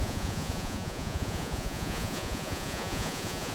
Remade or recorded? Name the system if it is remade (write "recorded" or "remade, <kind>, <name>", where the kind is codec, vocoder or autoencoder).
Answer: remade, vocoder, Vocos